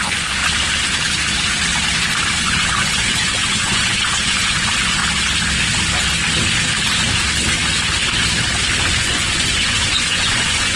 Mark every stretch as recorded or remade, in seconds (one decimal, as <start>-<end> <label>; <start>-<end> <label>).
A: 0.0-0.4 remade; 0.4-2.4 recorded; 2.4-5.0 remade; 5.0-8.8 recorded; 8.8-10.8 remade